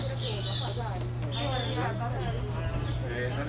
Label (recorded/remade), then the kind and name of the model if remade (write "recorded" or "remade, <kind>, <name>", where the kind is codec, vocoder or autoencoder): recorded